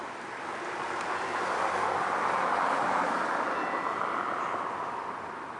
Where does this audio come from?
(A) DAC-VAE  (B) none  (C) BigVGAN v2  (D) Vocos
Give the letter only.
B